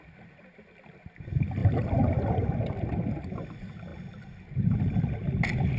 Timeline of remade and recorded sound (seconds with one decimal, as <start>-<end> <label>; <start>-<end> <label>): 0.0-5.8 recorded